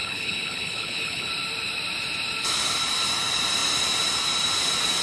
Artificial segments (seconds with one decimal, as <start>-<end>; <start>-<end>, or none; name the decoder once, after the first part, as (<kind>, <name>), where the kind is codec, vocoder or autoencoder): 0.0-1.3 (codec, HILCodec)